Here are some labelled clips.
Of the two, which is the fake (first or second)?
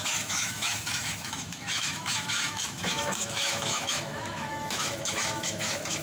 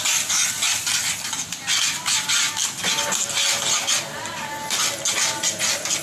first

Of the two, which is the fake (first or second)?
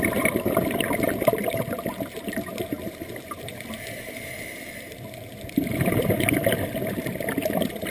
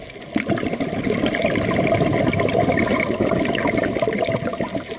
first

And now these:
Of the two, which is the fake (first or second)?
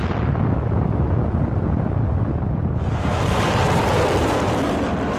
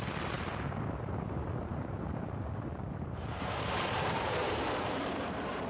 second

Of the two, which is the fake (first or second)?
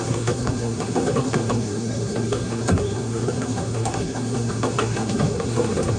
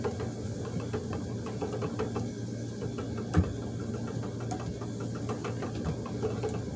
first